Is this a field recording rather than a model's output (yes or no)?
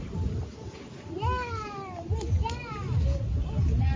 yes